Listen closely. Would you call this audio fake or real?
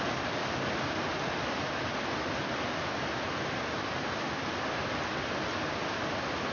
real